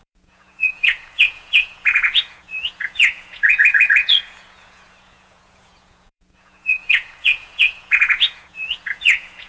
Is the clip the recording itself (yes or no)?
no